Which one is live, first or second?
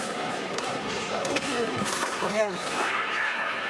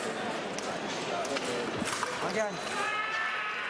second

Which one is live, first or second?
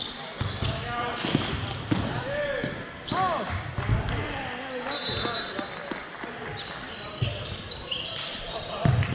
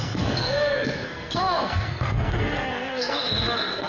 first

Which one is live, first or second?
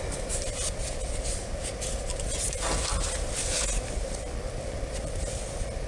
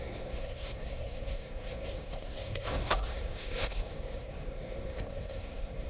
first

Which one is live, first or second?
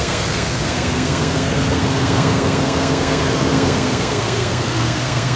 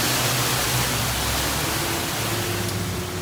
second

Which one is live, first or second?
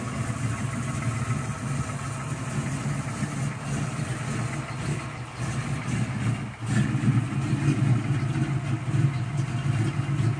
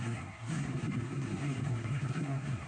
first